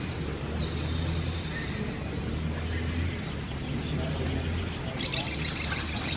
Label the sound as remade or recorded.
recorded